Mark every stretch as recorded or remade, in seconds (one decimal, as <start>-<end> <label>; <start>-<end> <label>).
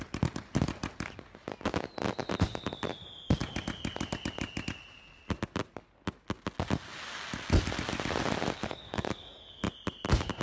0.0-8.6 recorded; 8.6-9.7 remade; 9.7-10.4 recorded